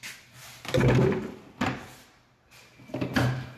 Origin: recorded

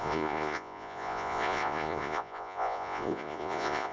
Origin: remade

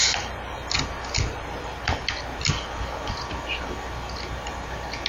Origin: recorded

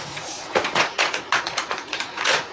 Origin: remade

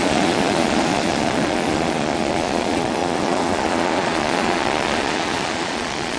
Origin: remade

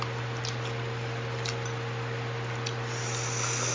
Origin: recorded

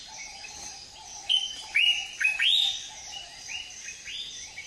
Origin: recorded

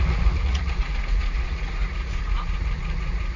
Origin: remade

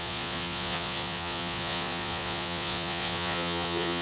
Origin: remade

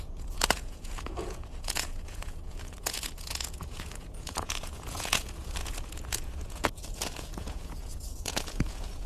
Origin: remade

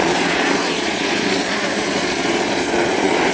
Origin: remade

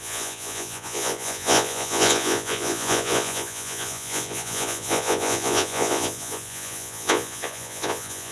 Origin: remade